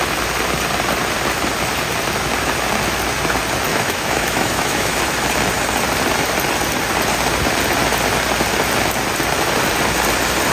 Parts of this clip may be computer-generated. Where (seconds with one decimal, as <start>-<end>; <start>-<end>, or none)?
3.7-5.0